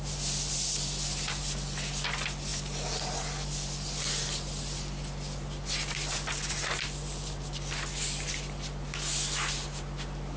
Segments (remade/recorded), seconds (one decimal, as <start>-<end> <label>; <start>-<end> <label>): 0.0-10.4 recorded